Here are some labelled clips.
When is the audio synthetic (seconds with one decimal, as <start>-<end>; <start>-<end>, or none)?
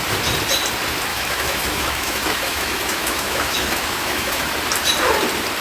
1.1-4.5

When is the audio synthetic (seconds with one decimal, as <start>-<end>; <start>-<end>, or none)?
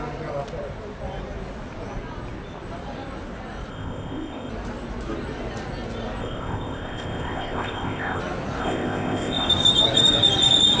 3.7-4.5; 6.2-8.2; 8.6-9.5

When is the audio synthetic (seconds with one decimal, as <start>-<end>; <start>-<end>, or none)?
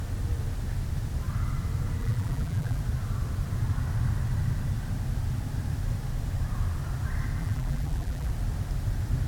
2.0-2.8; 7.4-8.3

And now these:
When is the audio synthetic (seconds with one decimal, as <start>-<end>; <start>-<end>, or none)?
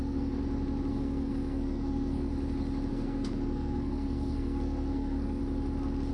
0.0-0.4; 0.9-2.3; 2.9-5.4